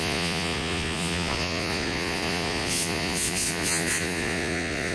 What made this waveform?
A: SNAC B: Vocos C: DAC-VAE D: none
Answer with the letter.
B